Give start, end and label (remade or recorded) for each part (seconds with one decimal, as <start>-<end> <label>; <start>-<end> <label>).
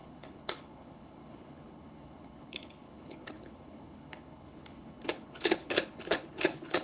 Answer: 0.0-6.8 remade